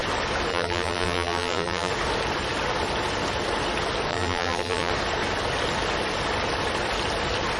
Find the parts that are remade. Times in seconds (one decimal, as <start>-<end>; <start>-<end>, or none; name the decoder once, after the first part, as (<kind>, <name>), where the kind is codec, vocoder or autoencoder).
0.5-1.9 (vocoder, BigVGAN v2); 4.1-4.9